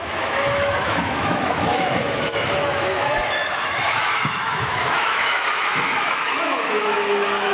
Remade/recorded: remade